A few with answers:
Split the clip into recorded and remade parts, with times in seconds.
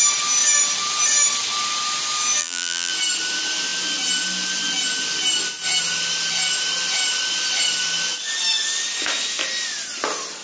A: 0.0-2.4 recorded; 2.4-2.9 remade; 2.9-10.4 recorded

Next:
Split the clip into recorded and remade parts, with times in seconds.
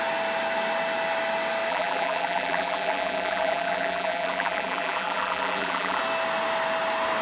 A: 0.0-1.7 recorded; 1.7-6.0 remade; 6.0-7.2 recorded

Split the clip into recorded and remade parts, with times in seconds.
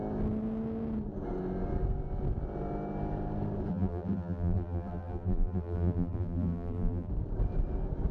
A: 0.0-3.7 recorded; 3.7-7.1 remade; 7.1-8.1 recorded